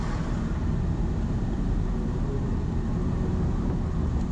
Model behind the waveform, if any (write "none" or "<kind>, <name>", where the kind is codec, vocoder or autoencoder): none